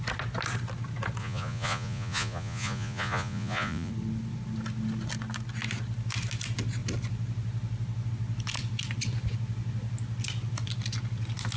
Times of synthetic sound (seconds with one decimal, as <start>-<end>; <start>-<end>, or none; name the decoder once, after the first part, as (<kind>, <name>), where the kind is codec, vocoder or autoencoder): 1.2-3.9 (vocoder, Vocos)